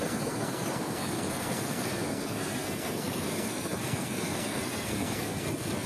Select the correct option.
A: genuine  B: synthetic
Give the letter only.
B